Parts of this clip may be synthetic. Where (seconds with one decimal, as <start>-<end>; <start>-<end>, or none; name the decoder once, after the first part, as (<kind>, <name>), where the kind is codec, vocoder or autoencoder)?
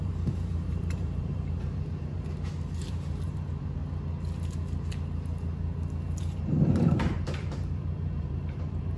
0.0-3.8 (vocoder, BigVGAN v2); 6.2-9.0